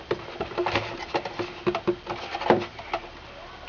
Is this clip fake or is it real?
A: real